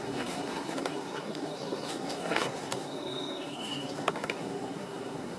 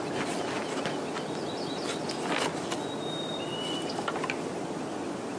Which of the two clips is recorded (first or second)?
second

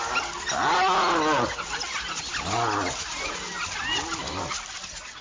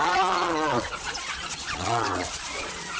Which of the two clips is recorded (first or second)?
first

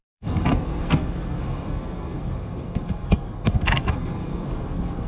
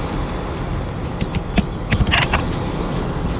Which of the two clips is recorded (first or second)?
second